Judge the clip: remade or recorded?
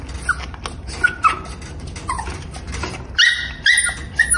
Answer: recorded